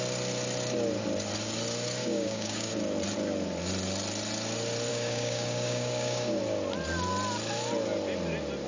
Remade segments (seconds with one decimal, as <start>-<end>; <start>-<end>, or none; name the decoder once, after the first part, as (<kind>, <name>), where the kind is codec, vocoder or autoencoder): 2.0-2.7 (codec, DAC); 4.9-6.4